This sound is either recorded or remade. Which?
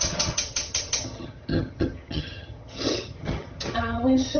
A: remade